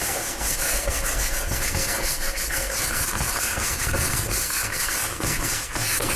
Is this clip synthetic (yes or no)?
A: yes